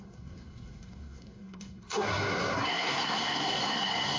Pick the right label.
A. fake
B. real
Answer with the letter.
A